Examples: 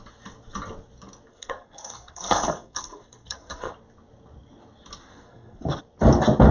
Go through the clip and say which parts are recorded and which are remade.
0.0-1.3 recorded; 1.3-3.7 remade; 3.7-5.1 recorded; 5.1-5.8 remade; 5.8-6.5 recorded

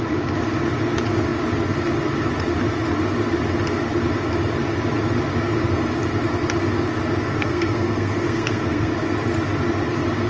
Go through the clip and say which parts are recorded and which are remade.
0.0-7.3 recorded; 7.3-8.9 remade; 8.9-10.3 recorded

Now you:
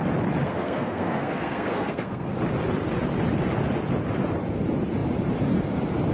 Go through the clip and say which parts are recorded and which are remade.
0.0-0.4 recorded; 0.4-2.4 remade; 2.4-6.1 recorded